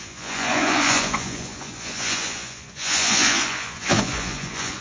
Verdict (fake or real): fake